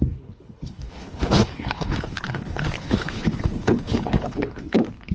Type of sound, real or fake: fake